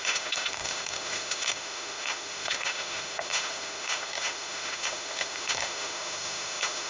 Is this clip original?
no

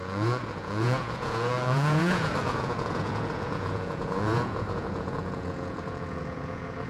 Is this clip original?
no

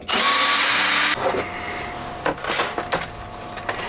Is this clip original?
yes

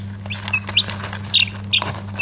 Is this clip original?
yes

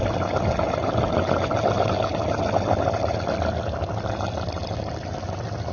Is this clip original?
yes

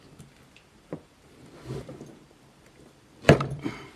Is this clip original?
no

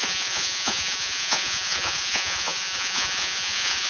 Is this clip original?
no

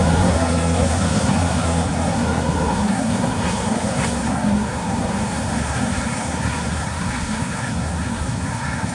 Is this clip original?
no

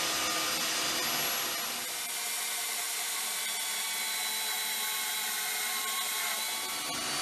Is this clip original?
yes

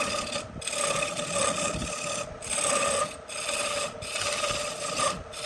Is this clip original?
yes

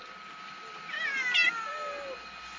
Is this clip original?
yes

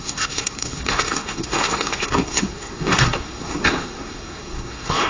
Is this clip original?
no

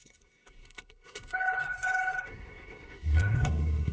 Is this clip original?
no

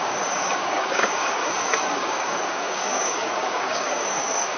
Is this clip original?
no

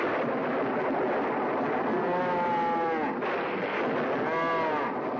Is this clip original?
yes